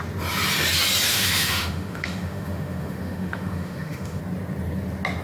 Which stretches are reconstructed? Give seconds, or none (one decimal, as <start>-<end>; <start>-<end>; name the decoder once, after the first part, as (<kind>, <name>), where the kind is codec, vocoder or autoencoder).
1.1-4.2 (autoencoder, DAC-VAE)